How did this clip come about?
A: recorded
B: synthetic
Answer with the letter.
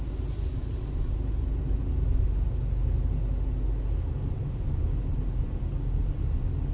A